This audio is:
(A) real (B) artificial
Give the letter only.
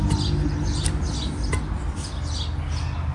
A